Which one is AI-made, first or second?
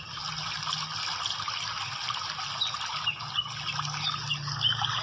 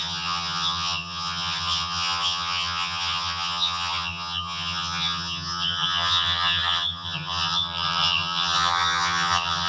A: second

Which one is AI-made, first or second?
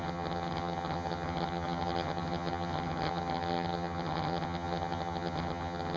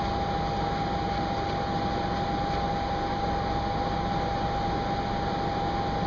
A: first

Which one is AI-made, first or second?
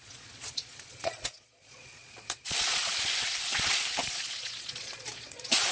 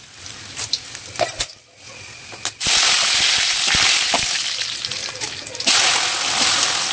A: first